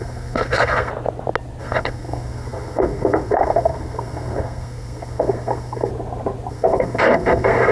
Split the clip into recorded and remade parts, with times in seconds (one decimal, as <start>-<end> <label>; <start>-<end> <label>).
0.0-0.9 remade; 0.9-1.6 recorded; 1.6-5.9 remade; 5.9-6.5 recorded; 6.5-7.7 remade